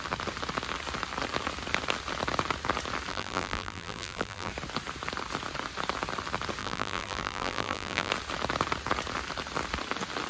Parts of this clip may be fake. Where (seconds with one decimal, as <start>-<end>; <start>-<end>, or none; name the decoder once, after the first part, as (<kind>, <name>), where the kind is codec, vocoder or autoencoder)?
3.1-4.5 (vocoder, BigVGAN v2); 6.6-8.1

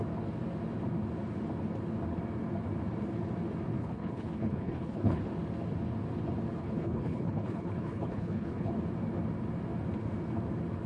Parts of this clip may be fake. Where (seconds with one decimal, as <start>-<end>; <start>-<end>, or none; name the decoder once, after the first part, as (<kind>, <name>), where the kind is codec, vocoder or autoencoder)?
3.8-5.2 (codec, HILCodec); 6.6-8.7